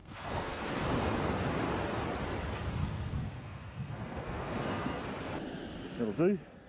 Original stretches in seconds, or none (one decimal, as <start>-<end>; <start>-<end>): 0.6-2.8; 5.0-6.7